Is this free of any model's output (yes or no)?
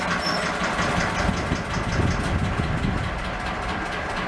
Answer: yes